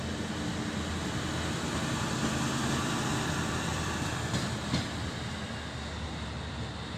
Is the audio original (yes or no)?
yes